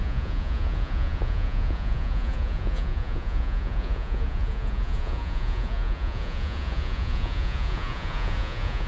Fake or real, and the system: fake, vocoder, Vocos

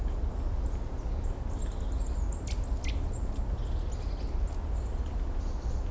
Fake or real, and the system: real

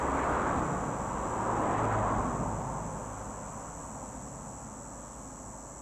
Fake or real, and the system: real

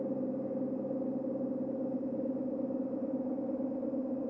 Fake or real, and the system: real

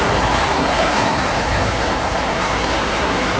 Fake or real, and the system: fake, codec, SNAC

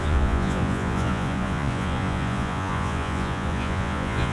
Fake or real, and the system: fake, vocoder, Vocos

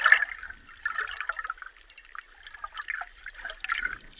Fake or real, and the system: real